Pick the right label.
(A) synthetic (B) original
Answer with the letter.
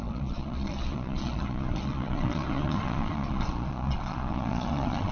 A